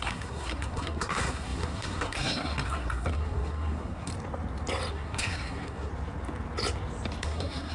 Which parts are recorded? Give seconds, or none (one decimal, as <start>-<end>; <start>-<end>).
4.1-4.9; 5.9-7.2